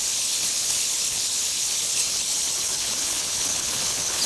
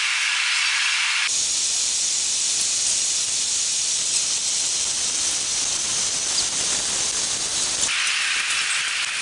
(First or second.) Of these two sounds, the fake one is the first